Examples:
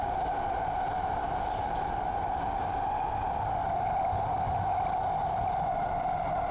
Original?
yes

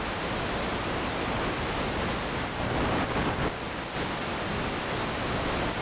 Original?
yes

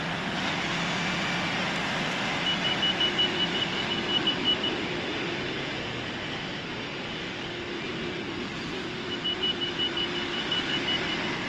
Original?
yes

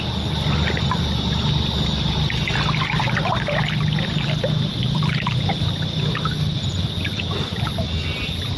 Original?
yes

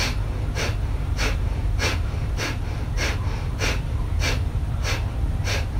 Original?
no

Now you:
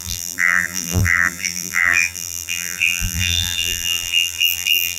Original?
no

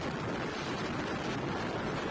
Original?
yes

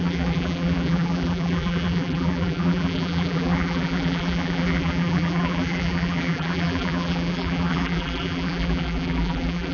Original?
no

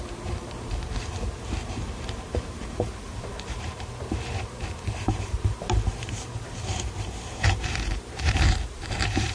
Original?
no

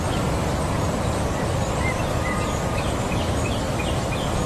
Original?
no